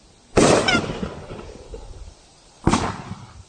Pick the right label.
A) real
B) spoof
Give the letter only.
A